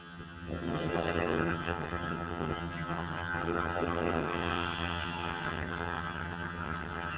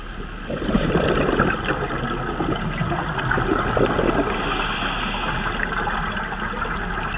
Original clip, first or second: second